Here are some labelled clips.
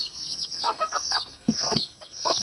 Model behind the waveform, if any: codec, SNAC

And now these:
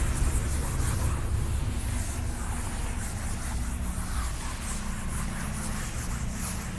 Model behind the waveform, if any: none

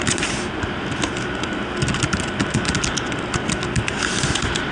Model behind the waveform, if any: none